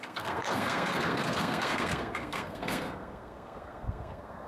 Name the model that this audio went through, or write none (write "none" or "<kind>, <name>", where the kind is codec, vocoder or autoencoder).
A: codec, SNAC